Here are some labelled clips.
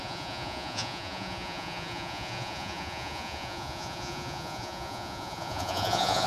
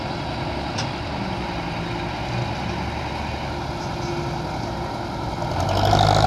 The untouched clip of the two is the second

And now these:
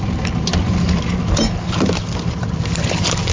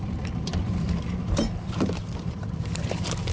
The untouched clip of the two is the first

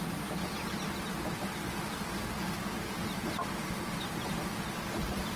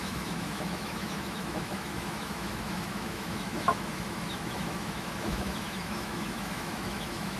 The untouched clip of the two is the first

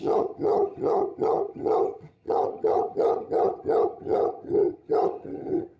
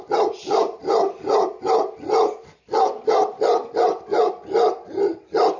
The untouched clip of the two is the second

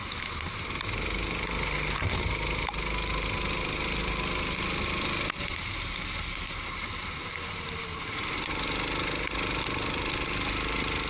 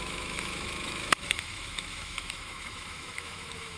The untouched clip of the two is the first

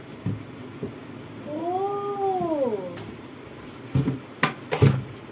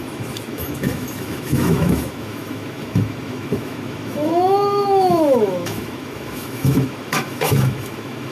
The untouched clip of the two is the first